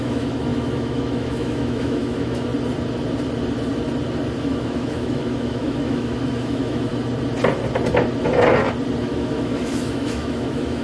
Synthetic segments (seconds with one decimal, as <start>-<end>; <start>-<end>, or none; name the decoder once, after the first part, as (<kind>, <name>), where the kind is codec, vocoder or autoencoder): 0.0-2.5 (autoencoder, DAC-VAE); 4.4-6.9; 9.0-10.8